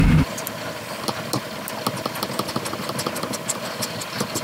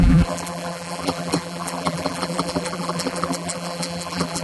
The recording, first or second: first